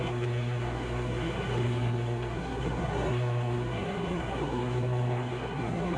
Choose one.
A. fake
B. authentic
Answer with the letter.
A